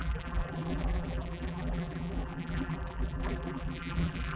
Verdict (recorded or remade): remade